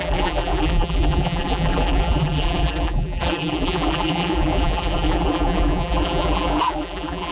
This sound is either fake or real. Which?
fake